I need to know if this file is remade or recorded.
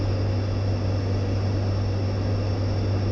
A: recorded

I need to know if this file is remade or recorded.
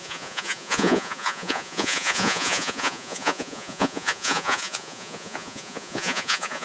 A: remade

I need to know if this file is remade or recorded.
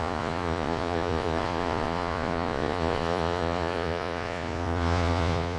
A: remade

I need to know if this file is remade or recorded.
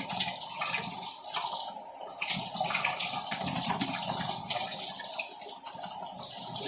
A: recorded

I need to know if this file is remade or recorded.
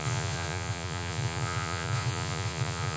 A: remade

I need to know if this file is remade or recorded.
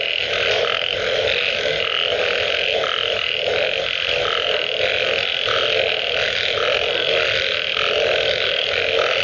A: recorded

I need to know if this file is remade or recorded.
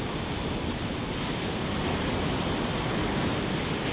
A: recorded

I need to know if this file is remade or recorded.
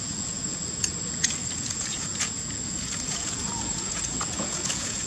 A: remade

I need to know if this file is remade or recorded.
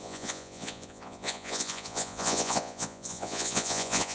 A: remade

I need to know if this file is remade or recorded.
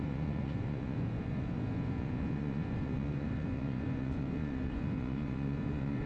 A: remade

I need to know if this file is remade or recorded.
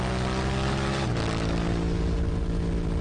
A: recorded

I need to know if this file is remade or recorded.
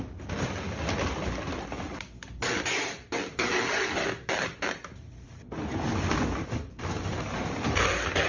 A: recorded